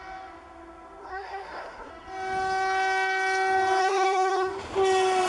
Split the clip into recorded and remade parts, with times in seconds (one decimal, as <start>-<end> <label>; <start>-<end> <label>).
0.0-1.0 recorded; 1.0-1.9 remade; 1.9-3.8 recorded; 3.8-4.5 remade; 4.5-5.3 recorded